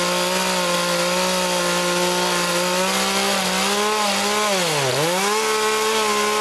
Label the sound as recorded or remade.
recorded